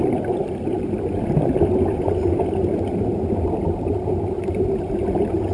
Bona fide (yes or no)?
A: yes